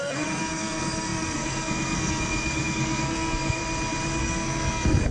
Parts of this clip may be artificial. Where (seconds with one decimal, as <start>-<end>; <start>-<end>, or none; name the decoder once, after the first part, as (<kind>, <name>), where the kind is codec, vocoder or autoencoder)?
0.0-3.6 (codec, SNAC); 4.2-5.1